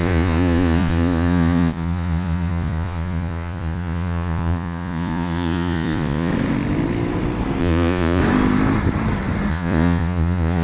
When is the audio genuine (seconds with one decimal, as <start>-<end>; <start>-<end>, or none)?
6.3-7.6; 8.2-9.5